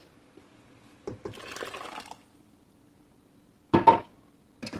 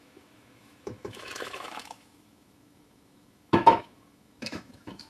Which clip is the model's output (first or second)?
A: second